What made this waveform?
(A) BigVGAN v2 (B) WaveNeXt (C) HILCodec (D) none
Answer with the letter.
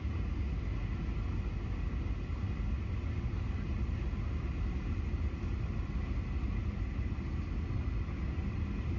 D